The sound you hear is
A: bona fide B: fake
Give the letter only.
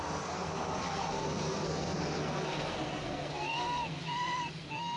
B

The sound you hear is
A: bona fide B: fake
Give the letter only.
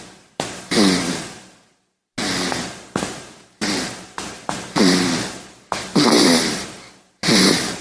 A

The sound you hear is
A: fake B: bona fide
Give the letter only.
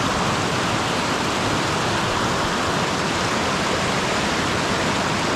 B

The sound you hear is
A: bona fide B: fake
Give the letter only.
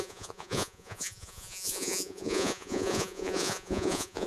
B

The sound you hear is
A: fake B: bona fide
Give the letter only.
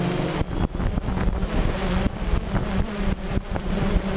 B